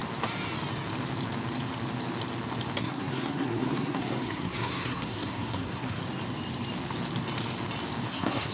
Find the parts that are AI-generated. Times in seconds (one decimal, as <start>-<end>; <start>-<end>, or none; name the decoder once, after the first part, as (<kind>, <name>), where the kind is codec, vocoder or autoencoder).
2.8-6.0 (codec, SNAC); 8.1-8.5

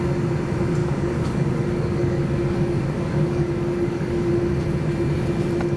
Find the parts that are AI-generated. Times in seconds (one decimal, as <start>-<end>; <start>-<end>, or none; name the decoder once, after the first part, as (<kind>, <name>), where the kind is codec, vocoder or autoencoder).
0.8-4.3 (codec, DAC)

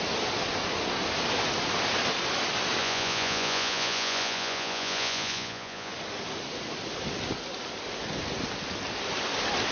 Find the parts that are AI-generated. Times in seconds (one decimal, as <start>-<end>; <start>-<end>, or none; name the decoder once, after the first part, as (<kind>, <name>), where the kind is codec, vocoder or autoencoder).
2.8-5.9 (vocoder, Vocos)

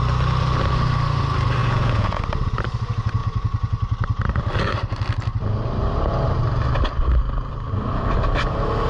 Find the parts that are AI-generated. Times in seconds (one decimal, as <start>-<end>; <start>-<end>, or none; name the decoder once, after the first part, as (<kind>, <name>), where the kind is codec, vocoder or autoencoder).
1.6-2.2 (vocoder, Vocos)